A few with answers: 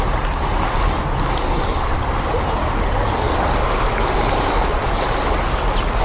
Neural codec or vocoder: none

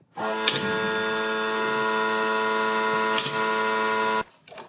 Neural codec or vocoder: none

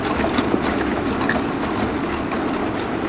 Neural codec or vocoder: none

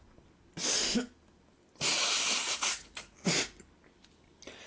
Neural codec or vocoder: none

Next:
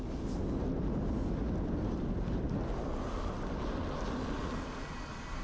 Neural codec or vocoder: none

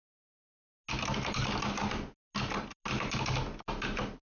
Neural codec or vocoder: none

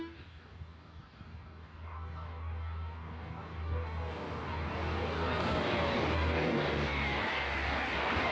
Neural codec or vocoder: codec, DAC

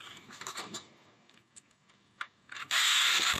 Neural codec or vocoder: codec, DAC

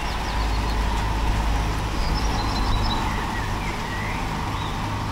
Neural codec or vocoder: none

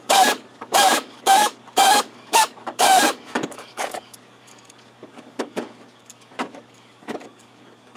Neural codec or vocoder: codec, DAC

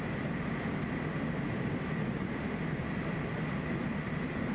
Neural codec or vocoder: none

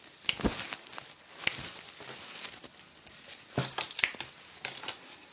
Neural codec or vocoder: none